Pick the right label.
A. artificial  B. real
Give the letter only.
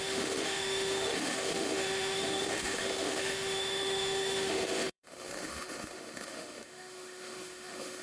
A